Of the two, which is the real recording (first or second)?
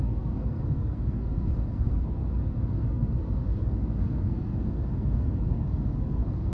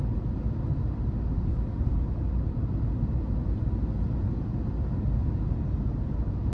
second